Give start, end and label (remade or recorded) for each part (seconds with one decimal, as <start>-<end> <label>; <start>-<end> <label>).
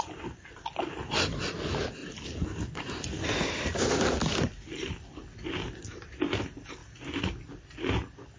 0.0-8.4 recorded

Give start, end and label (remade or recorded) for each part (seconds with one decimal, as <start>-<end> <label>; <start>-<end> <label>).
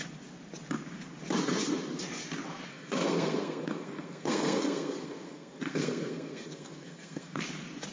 0.0-2.7 recorded; 2.7-7.4 remade; 7.4-7.9 recorded